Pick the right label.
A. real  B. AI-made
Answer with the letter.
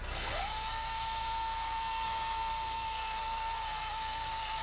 B